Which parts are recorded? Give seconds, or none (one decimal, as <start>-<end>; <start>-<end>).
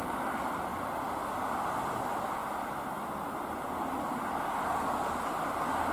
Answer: 0.0-0.7; 1.3-2.4; 5.2-5.9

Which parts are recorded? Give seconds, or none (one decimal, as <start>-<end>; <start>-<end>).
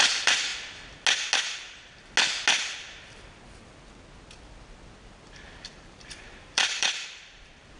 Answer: 0.5-5.2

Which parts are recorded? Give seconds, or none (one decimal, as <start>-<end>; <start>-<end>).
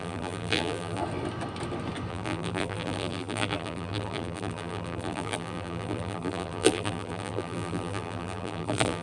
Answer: 1.0-2.1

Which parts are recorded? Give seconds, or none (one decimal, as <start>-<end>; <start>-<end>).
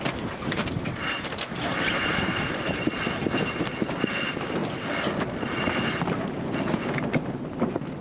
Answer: 4.6-5.2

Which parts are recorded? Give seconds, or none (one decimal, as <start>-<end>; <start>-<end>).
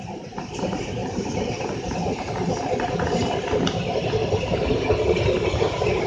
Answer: 0.0-1.0; 2.2-6.1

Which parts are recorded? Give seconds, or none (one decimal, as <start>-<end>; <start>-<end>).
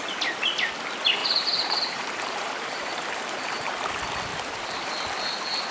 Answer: 0.0-1.2; 3.7-4.3; 4.9-5.7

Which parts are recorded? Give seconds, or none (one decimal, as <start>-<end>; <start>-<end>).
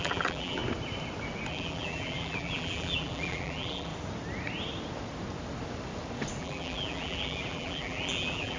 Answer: 0.6-1.5; 3.9-6.4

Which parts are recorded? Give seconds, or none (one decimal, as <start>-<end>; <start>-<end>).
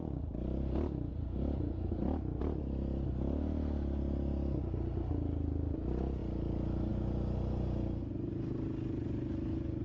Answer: 0.0-9.8